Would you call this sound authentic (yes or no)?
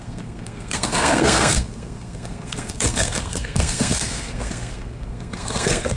no